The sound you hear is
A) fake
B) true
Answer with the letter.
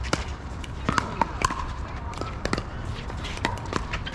A